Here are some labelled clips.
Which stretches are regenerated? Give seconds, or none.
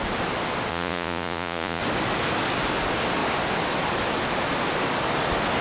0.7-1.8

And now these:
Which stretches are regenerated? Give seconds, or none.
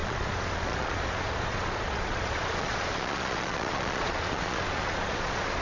0.0-5.6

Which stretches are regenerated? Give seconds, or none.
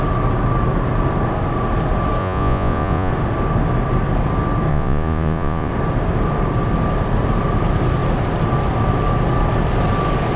2.2-3.1; 4.7-5.7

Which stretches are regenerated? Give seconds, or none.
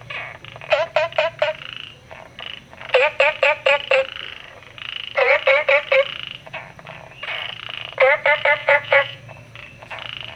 8.6-9.2